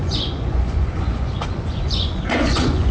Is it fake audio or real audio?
fake